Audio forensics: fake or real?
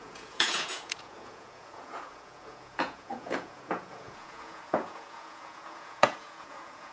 fake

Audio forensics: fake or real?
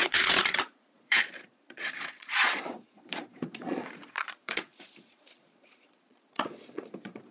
fake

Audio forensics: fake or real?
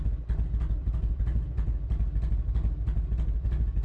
real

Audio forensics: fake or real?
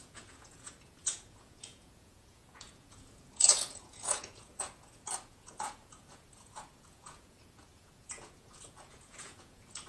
fake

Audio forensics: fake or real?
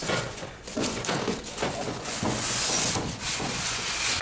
fake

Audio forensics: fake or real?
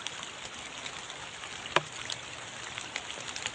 real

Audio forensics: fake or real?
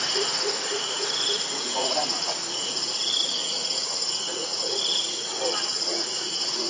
fake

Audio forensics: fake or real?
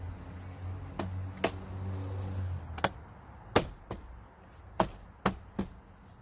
real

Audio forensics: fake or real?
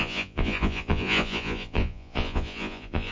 fake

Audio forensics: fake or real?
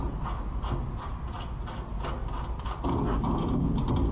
real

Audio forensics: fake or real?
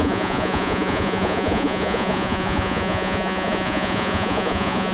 fake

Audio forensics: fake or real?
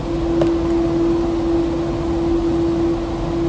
real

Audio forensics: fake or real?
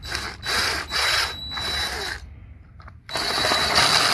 real